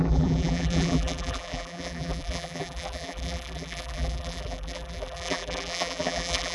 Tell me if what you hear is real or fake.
fake